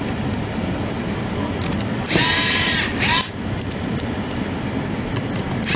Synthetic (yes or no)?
yes